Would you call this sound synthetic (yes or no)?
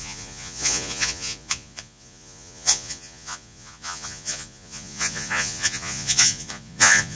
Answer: yes